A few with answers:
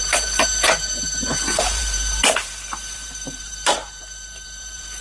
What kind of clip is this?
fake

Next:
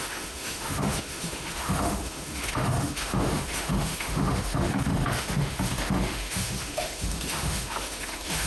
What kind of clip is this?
fake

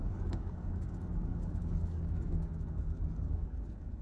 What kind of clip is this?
fake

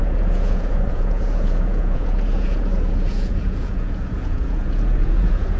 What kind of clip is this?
fake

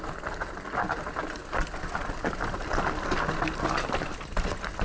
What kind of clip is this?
real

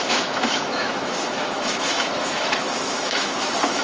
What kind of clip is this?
fake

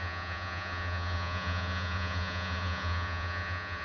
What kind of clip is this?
fake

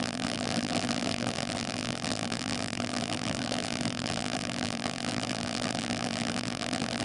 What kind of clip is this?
fake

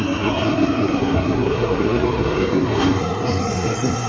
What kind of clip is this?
fake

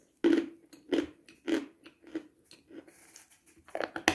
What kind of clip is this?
real